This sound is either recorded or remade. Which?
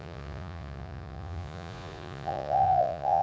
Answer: remade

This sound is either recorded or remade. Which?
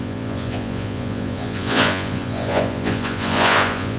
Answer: remade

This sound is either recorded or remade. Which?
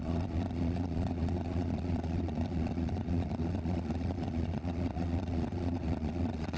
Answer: remade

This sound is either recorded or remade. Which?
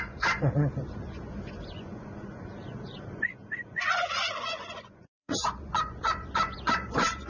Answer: remade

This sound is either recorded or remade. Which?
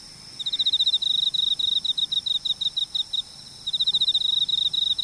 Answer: recorded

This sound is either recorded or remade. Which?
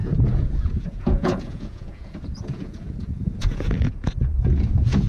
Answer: remade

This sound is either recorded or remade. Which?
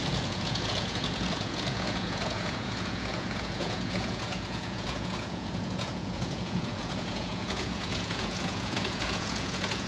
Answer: remade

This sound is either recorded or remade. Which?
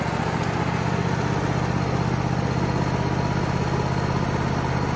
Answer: recorded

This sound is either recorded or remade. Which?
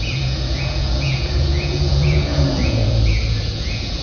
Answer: remade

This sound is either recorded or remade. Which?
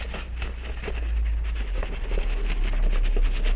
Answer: recorded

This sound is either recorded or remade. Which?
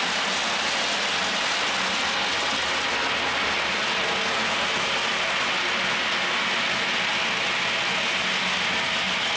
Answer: recorded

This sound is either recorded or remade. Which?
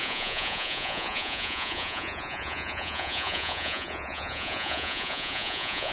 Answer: remade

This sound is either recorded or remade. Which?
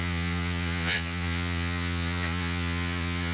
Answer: remade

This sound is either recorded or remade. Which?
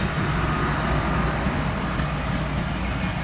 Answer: recorded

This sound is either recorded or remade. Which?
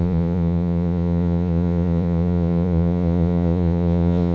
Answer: remade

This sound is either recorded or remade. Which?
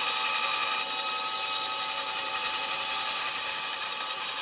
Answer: recorded